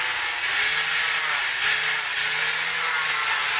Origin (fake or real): real